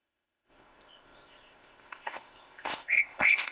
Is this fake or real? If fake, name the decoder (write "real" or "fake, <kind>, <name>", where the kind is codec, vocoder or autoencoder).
fake, codec, ZipCodec